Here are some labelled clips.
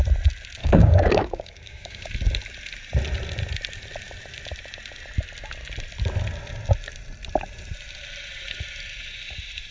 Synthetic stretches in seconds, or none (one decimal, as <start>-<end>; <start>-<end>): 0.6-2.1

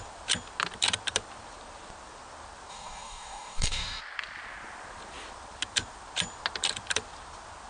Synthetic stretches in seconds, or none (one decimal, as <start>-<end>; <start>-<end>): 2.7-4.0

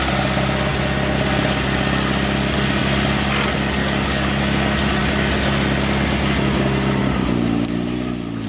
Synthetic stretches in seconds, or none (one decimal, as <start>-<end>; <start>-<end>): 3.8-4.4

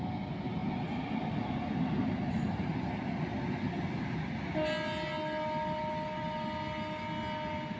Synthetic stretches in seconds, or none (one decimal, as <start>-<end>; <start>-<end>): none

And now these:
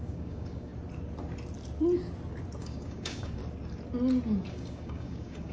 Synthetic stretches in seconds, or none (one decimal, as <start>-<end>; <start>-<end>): 0.0-0.7; 2.6-3.4; 4.5-5.5

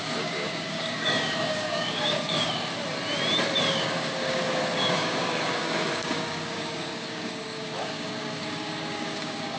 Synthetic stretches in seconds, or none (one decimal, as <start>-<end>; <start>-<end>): 0.0-2.7; 3.7-9.6

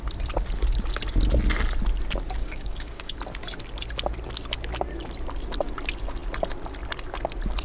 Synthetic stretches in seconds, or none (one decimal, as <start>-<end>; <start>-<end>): 2.4-3.2